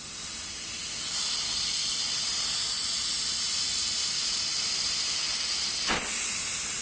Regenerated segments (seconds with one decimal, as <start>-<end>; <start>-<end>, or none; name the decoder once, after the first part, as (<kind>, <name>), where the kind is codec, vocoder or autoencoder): none

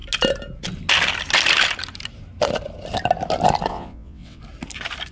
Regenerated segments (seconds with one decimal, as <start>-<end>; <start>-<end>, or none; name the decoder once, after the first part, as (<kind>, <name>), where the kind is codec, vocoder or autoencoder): 3.7-4.4 (vocoder, WaveNeXt)

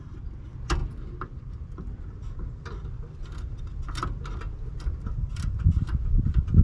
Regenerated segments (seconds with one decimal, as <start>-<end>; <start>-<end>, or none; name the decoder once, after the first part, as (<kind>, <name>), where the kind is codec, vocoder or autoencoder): 0.8-2.3 (vocoder, BigVGAN v2); 5.3-6.6

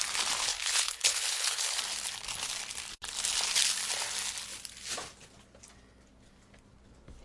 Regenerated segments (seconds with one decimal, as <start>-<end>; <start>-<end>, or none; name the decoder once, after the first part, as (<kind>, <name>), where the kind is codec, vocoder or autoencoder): 0.5-1.8 (codec, HILCodec)

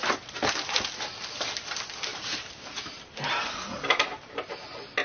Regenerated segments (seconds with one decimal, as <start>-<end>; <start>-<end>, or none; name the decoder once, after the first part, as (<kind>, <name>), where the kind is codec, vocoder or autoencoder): 2.1-4.5 (vocoder, BigVGAN v2)

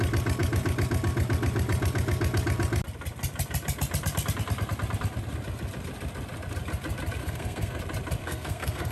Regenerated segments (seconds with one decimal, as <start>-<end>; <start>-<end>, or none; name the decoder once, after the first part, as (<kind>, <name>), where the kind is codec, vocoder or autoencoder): 7.2-7.8 (codec, SNAC); 8.2-8.9

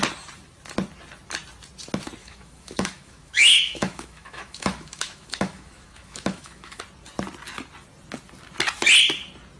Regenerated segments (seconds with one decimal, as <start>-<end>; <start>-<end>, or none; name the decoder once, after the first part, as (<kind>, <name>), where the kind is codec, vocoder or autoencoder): 2.2-6.8 (autoencoder, DAC-VAE)

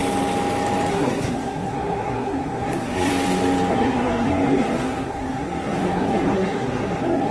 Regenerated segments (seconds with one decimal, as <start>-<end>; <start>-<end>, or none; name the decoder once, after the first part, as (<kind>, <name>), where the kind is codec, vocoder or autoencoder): 0.9-3.1 (codec, SNAC); 3.7-7.3